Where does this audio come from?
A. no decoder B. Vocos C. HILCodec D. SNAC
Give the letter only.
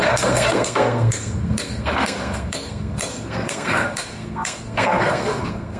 D